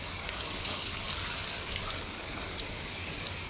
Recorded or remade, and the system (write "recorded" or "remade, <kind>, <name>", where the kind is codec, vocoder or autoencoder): remade, codec, DAC